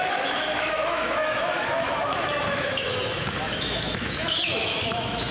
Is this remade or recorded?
remade